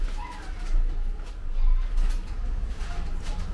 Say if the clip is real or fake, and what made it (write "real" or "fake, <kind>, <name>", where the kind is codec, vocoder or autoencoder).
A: real